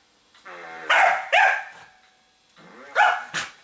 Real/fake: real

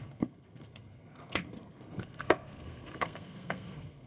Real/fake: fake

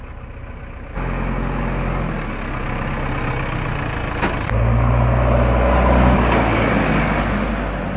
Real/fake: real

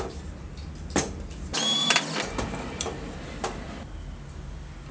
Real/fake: real